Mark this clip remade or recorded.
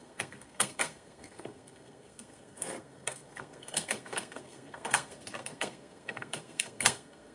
remade